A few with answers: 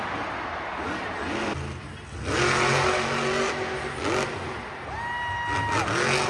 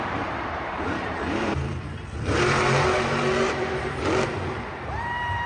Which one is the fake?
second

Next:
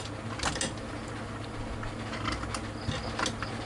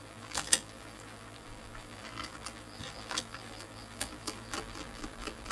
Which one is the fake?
second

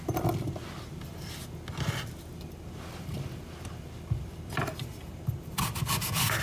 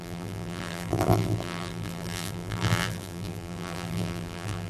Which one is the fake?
second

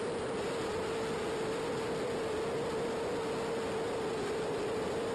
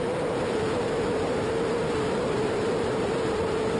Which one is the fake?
second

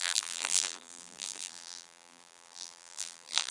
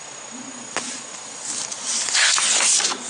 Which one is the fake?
first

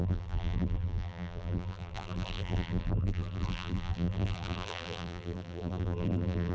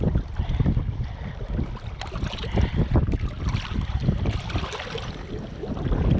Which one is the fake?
first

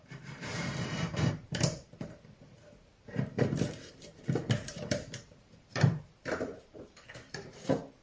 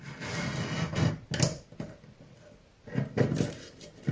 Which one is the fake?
first